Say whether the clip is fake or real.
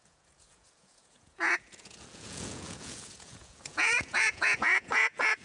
fake